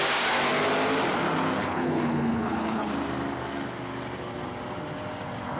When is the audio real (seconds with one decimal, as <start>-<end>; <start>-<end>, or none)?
0.0-1.6; 2.9-5.6